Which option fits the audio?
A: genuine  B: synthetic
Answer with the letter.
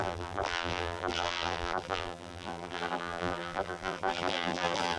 B